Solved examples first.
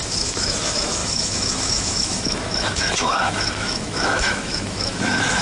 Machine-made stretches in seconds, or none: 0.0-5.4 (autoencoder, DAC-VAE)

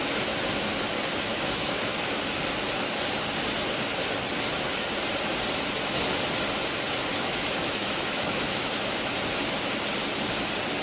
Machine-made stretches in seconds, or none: 1.3-1.9 (autoencoder, DAC-VAE); 7.1-9.1